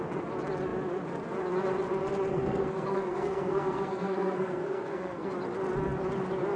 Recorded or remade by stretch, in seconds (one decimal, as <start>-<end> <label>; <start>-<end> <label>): 0.0-2.3 recorded; 2.3-5.3 remade; 5.3-6.6 recorded